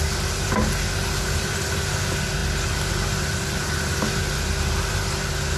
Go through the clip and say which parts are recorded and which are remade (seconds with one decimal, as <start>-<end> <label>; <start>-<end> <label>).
0.0-5.6 recorded